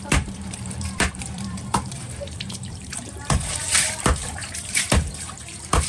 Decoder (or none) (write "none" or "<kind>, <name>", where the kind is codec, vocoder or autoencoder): vocoder, BigVGAN v2